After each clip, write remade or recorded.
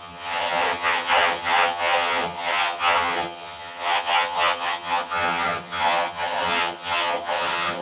remade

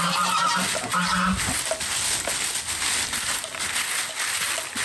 recorded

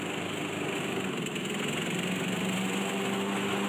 recorded